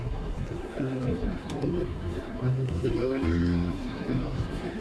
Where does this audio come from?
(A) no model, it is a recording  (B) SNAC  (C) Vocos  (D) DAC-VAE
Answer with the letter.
B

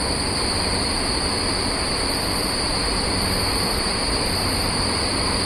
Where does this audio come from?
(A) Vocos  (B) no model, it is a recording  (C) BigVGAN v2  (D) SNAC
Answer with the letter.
B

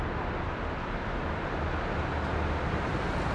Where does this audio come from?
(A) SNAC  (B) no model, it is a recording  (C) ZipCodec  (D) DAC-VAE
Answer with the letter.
B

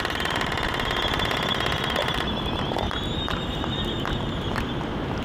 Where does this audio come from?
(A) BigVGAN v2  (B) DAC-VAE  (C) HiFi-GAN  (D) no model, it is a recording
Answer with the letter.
A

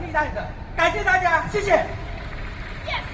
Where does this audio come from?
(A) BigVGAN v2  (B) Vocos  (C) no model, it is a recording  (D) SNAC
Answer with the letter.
C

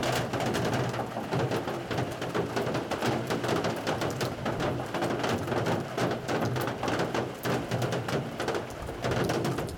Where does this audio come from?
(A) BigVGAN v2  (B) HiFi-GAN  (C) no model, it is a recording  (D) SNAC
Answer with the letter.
C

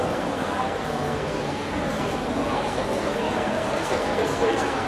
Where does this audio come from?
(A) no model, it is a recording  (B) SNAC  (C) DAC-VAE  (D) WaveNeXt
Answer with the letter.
B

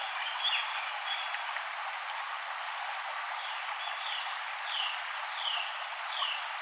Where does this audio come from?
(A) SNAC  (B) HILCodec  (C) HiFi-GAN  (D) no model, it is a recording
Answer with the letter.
D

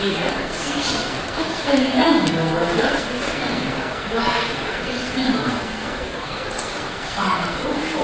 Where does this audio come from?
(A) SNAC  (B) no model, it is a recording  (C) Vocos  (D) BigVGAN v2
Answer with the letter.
A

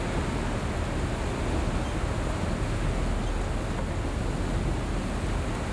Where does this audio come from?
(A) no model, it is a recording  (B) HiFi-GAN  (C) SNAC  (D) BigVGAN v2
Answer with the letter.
A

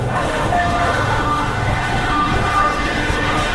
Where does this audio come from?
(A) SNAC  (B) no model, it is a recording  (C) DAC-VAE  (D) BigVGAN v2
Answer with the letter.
C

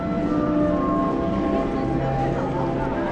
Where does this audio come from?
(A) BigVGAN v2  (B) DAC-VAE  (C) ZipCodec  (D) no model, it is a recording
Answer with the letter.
D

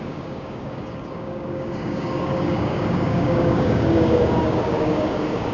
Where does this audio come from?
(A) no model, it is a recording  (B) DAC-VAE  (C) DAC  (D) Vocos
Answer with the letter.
C